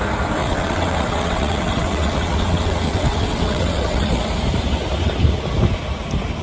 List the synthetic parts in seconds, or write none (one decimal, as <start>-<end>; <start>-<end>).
0.4-4.2